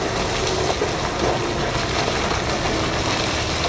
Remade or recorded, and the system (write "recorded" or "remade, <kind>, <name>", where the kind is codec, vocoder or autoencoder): recorded